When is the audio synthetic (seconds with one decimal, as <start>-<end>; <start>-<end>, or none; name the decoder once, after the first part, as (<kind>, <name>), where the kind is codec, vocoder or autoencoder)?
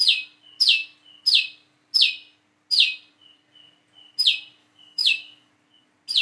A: 4.6-5.5 (autoencoder, DAC-VAE)